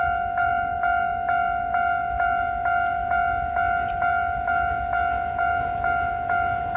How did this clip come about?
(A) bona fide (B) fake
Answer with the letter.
B